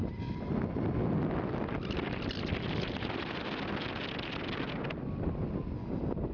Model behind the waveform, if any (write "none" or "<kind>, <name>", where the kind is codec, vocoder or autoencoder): none